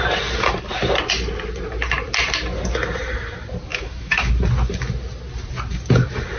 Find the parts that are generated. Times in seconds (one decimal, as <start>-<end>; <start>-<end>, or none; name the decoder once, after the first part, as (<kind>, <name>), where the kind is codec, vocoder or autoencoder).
3.7-4.3 (autoencoder, DAC-VAE)